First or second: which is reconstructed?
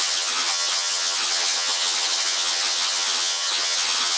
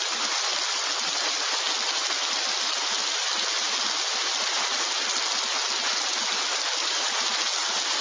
first